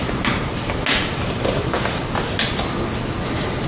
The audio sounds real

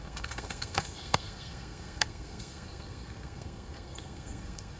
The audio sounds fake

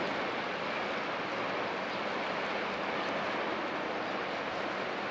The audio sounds real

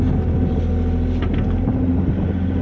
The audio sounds real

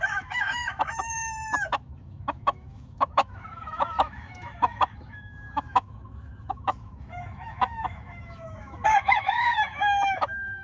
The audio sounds fake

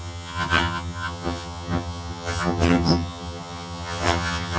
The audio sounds fake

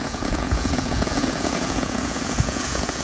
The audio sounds fake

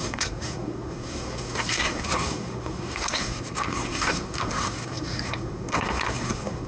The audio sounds fake